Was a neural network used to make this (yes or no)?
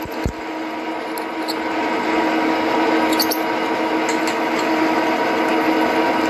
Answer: no